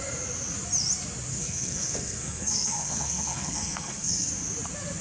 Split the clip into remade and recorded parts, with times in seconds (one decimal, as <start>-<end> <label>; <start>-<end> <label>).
0.0-1.3 recorded; 1.3-4.3 remade; 4.3-5.0 recorded